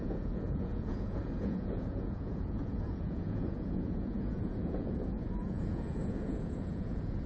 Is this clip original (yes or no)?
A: no